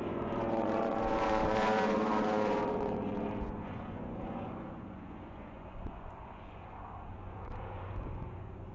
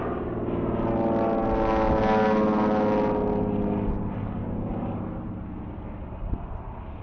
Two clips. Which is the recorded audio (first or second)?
second